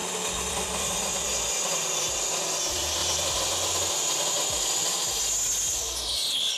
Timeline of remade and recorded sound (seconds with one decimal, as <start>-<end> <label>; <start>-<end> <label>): 0.0-0.5 recorded; 0.5-1.3 remade; 1.3-2.1 recorded; 2.1-3.0 remade; 3.0-4.9 recorded; 4.9-6.6 remade